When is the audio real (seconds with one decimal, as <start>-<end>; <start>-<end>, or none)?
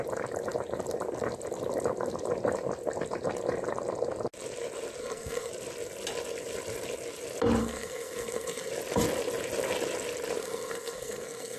0.0-5.0; 5.5-7.6; 8.7-10.4